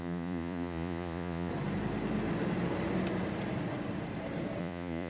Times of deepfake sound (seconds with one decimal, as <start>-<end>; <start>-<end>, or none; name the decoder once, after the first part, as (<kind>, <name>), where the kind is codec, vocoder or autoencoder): 0.0-1.5 (vocoder, Vocos); 4.6-5.1